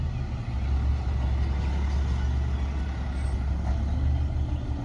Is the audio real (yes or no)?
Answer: yes